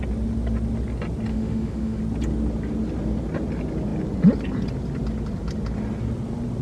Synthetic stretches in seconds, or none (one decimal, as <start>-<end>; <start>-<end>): 1.3-2.0